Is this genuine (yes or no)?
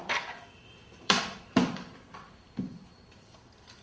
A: no